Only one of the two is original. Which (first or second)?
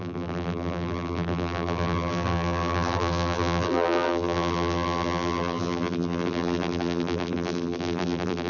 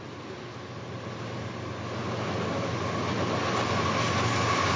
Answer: second